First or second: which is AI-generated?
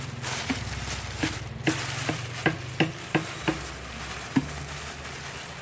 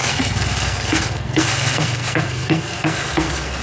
second